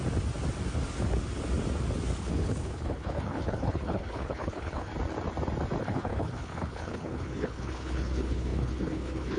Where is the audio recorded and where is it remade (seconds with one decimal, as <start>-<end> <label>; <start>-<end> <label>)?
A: 0.0-2.2 recorded; 2.2-4.9 remade; 4.9-5.8 recorded; 5.8-9.4 remade

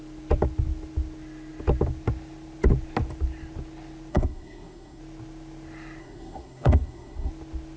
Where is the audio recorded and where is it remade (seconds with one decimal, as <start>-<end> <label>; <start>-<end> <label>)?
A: 0.0-4.1 recorded; 4.1-5.0 remade; 5.0-6.0 recorded; 6.0-7.3 remade; 7.3-7.8 recorded

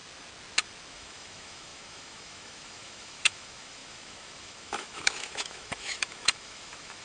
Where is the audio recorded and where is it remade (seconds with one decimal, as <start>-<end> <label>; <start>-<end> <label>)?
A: 0.0-0.9 recorded; 0.9-7.0 remade

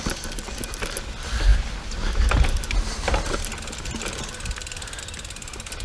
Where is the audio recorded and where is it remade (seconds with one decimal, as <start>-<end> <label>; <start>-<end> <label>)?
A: 0.0-5.8 recorded

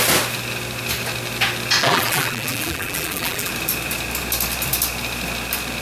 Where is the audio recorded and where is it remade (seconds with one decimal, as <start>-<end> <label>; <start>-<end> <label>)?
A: 0.0-1.8 recorded; 1.8-3.5 remade; 3.5-5.8 recorded

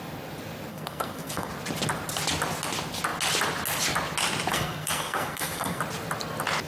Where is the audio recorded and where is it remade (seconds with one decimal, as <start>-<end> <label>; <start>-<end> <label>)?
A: 0.0-0.7 recorded; 0.7-1.5 remade; 1.5-4.5 recorded; 4.5-5.8 remade; 5.8-6.7 recorded

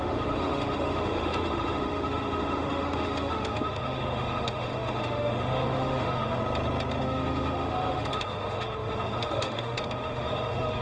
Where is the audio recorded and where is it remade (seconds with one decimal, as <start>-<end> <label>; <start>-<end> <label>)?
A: 0.0-6.4 remade; 6.4-7.0 recorded; 7.0-10.8 remade